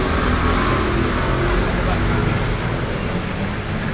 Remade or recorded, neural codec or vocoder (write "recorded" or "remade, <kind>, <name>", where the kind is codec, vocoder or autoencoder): recorded